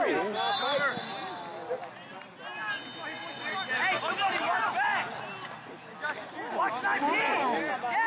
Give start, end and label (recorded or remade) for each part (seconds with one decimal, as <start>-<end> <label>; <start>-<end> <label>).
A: 0.0-8.1 recorded